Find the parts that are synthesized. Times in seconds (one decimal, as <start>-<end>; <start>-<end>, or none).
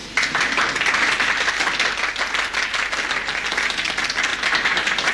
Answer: none